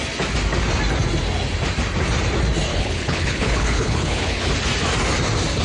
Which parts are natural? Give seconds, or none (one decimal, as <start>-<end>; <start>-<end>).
0.0-2.7; 4.5-5.6

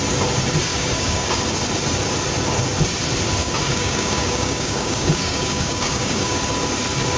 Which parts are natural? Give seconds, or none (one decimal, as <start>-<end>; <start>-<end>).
0.0-0.7; 1.4-3.4; 6.4-7.2

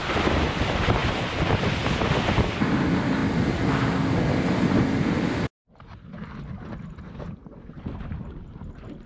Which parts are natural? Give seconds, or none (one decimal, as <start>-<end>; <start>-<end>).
0.0-9.1

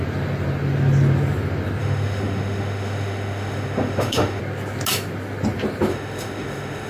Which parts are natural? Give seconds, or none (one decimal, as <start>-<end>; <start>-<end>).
0.0-1.8; 4.4-5.9

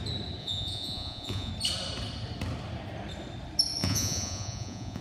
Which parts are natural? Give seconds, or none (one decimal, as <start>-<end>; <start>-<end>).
0.0-0.4; 1.5-3.8

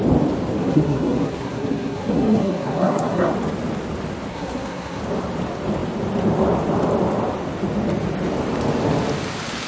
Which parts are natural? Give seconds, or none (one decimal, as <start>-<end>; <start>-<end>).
0.0-0.6; 3.3-4.3; 5.0-9.7

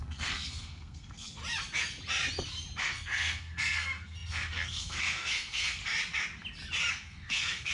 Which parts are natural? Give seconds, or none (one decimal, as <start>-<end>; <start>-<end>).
1.4-2.8; 5.8-6.9